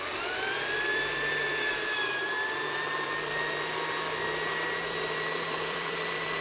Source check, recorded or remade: remade